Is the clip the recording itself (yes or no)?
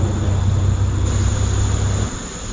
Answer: yes